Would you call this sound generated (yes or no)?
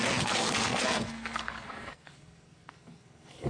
yes